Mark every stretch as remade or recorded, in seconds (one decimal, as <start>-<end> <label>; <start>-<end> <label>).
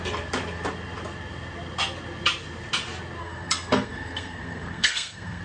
0.0-3.2 recorded; 3.2-5.4 remade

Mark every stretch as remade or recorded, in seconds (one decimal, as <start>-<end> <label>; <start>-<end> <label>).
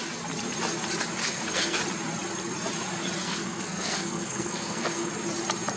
0.0-1.2 recorded; 1.2-1.8 remade; 1.8-3.2 recorded; 3.2-5.1 remade; 5.1-5.8 recorded